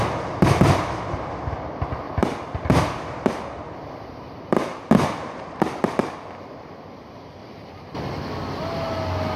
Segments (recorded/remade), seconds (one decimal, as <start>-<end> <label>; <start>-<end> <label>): 0.0-7.4 recorded; 7.4-8.0 remade; 8.0-9.4 recorded